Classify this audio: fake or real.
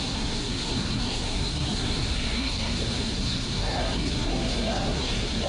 fake